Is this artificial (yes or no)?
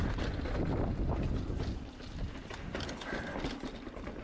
no